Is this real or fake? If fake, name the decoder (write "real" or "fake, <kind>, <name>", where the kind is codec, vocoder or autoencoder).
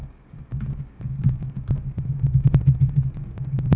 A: fake, codec, DAC